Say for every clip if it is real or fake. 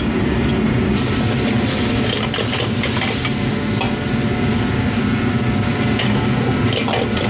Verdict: real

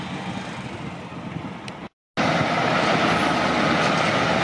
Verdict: real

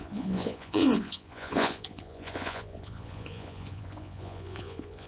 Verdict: fake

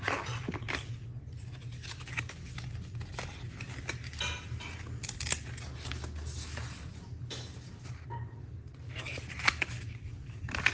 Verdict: real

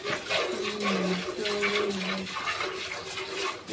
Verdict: real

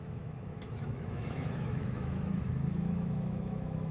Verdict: fake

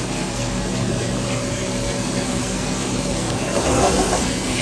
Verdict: fake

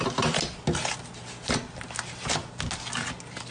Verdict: real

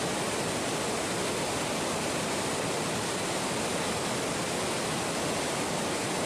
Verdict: real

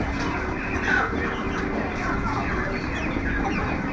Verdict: real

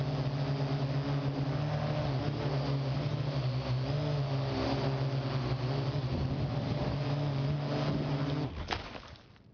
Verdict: real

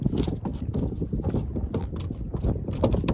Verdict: real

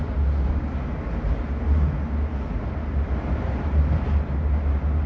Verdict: real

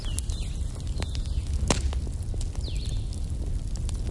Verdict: real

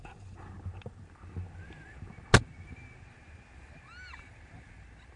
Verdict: real